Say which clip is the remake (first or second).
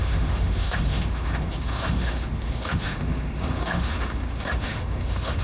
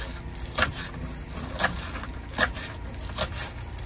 first